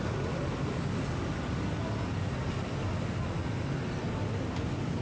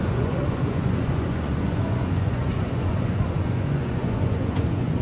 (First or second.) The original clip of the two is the first